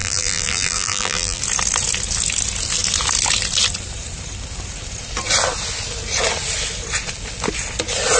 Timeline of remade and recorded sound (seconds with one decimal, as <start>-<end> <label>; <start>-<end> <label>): 0.0-1.4 remade; 1.4-8.2 recorded